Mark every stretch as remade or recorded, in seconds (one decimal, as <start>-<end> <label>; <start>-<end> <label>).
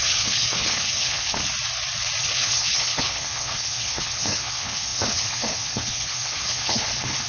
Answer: 0.0-1.4 remade; 1.4-2.2 recorded; 2.2-7.3 remade